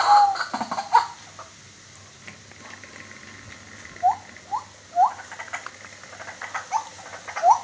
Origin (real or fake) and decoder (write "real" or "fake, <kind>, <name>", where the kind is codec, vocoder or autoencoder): real